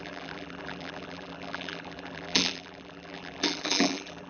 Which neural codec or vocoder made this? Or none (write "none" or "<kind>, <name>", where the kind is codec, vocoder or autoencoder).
vocoder, BigVGAN v2